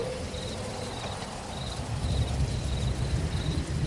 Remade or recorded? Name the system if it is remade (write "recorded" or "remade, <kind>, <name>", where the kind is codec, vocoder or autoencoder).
recorded